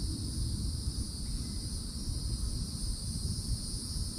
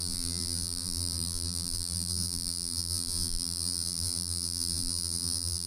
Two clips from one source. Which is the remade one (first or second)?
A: second